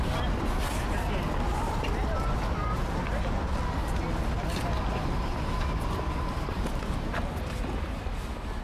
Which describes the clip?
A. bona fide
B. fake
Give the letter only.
A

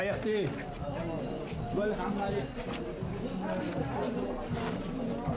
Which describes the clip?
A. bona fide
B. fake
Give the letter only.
A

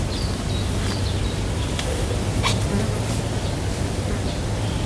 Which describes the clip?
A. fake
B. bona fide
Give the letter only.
B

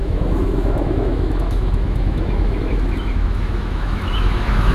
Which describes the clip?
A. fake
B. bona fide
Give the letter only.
A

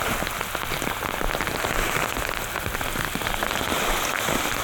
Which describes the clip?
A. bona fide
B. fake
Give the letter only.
A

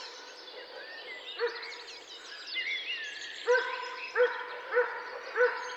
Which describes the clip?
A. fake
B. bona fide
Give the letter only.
B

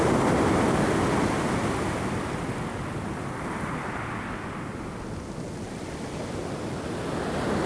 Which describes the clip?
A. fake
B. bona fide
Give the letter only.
B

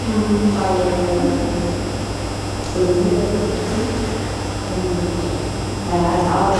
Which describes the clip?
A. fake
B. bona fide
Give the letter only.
B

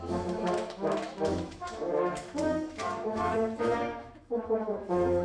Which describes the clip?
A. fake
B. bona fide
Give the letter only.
A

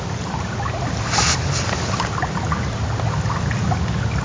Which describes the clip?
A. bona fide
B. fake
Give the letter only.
A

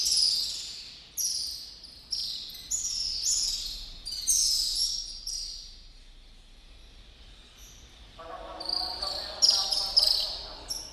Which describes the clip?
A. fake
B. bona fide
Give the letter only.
B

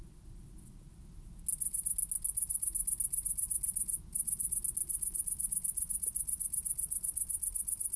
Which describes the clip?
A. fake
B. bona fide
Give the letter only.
B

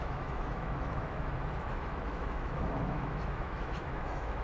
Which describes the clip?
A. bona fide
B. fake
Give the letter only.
B